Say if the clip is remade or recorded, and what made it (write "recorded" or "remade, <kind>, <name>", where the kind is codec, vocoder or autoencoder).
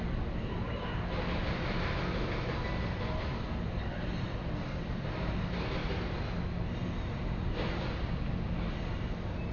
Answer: recorded